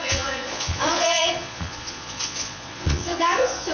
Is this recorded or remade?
remade